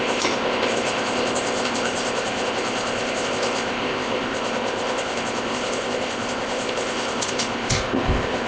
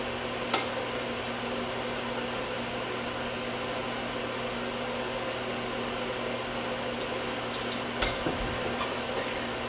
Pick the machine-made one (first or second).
first